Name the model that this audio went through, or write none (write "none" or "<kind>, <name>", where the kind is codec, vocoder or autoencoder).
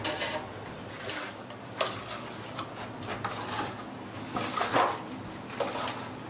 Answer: none